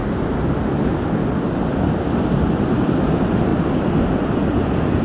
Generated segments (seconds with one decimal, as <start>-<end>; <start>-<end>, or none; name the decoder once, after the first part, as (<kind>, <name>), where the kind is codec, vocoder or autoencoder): none